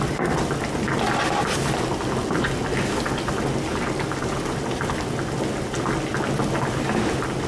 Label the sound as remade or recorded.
recorded